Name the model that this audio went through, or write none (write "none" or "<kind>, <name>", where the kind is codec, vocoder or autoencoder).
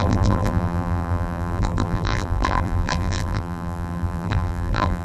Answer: vocoder, BigVGAN v2